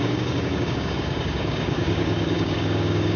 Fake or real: fake